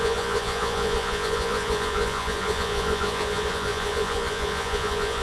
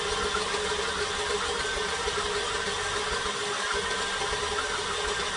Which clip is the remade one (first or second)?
first